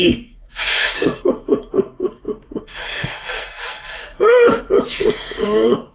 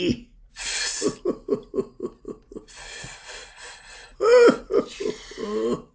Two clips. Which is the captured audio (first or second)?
second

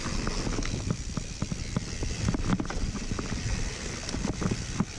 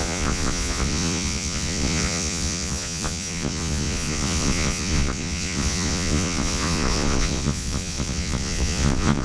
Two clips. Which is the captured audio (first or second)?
first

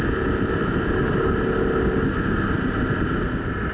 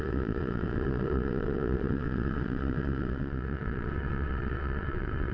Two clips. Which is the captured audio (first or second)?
first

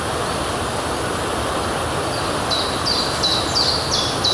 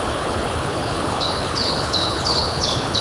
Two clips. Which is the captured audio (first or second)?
first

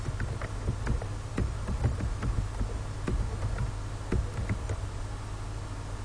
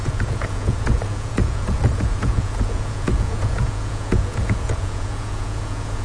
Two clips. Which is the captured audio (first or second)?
first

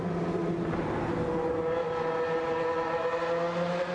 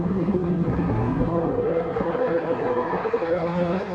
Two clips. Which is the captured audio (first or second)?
first